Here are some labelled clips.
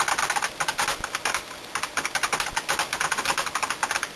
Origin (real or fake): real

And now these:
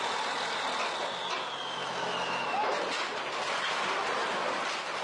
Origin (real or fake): real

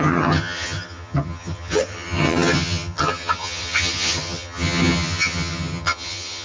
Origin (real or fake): fake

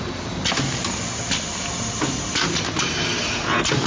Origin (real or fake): real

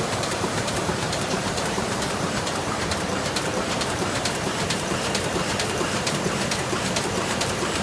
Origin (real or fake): fake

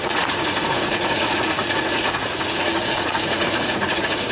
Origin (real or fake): fake